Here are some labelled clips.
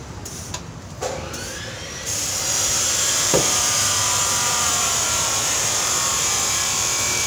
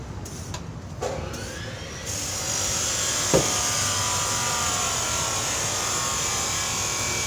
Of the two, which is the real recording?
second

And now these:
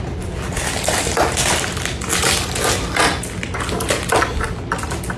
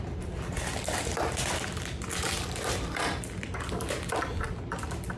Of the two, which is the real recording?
first